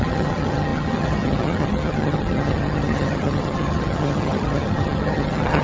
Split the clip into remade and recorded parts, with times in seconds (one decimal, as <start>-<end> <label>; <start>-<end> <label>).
0.0-5.6 remade